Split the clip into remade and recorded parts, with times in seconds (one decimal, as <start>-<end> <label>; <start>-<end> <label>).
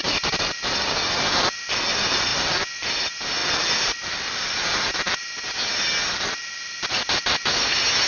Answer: 0.0-8.1 recorded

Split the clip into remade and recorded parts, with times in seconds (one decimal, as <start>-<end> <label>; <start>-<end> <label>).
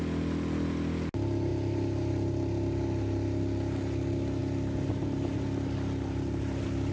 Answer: 0.0-6.9 recorded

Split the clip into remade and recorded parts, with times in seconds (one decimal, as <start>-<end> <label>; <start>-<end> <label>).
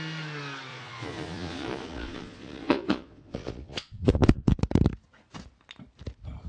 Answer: 0.0-0.7 recorded; 0.7-4.6 remade; 4.6-6.5 recorded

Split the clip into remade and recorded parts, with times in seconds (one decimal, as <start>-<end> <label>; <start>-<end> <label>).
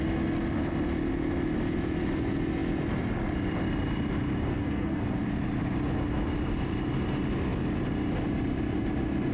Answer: 0.0-4.5 recorded; 4.5-5.0 remade; 5.0-9.3 recorded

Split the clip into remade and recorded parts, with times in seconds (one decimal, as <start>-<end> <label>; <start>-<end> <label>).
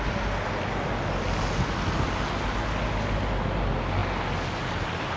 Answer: 0.0-5.2 recorded